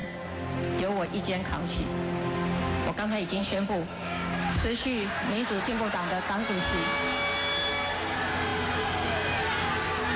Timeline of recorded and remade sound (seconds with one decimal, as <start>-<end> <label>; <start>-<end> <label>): 0.0-3.4 recorded; 3.4-5.6 remade; 5.6-10.2 recorded